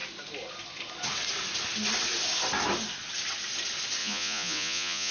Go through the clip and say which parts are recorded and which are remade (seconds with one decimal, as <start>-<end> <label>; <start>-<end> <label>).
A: 0.0-4.0 recorded; 4.0-5.1 remade